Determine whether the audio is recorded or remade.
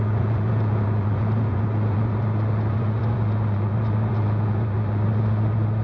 remade